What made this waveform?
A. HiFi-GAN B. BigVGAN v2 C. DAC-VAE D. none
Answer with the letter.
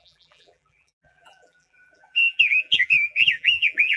B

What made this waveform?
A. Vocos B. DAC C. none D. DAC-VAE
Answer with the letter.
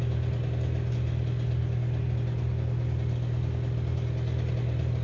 C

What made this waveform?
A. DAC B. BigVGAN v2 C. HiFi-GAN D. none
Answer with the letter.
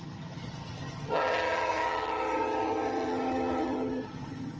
C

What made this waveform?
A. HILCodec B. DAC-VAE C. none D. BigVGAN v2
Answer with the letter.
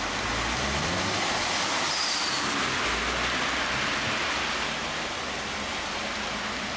C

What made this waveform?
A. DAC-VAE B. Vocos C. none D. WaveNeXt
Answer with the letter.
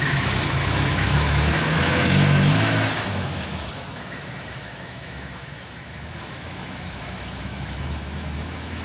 A